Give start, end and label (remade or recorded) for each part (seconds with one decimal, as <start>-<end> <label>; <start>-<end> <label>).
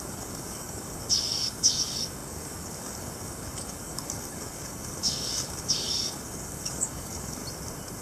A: 0.0-7.4 remade; 7.4-8.0 recorded